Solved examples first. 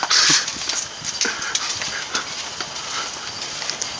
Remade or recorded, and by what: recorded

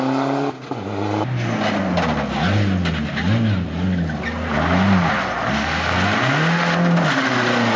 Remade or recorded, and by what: recorded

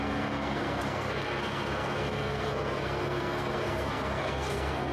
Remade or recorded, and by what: remade, codec, SNAC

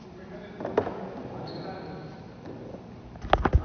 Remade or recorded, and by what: recorded